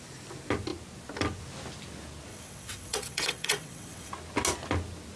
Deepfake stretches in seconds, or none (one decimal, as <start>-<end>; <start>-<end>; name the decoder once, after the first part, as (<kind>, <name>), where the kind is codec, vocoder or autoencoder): 2.3-4.1 (vocoder, WaveNeXt)